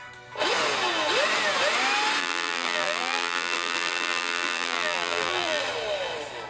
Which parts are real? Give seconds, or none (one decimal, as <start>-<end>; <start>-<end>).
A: 0.0-2.2; 5.6-6.5